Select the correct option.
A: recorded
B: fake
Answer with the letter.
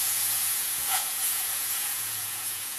B